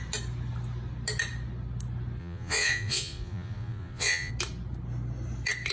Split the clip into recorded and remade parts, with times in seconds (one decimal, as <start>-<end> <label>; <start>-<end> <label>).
0.0-2.2 recorded; 2.2-4.3 remade; 4.3-5.7 recorded